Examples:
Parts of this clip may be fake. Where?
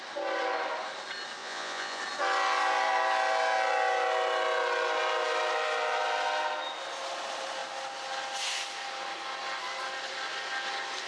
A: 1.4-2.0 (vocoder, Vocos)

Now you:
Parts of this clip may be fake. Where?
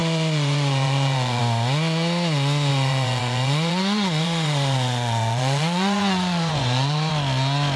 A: 0.0-1.4 (vocoder, Vocos); 2.7-7.1